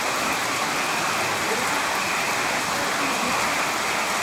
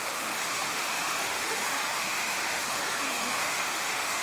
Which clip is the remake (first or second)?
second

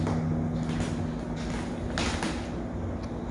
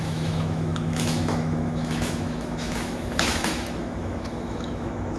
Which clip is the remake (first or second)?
second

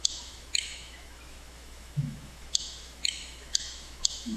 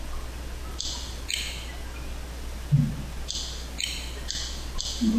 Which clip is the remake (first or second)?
first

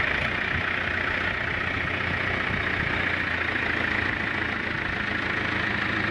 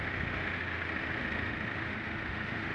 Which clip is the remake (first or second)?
second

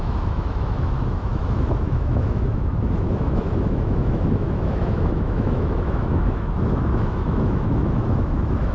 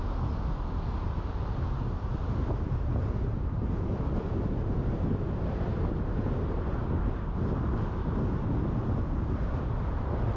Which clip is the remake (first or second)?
first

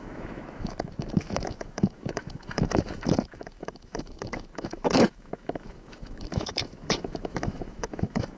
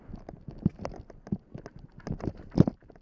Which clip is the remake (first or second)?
first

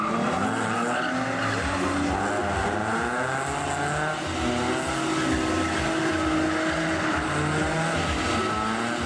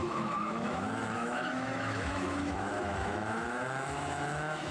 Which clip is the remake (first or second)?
second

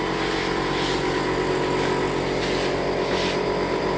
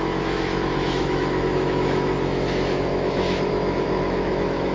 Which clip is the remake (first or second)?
second